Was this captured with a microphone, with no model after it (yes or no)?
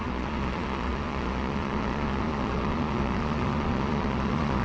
no